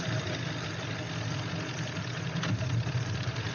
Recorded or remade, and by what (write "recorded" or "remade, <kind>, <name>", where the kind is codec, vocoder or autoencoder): recorded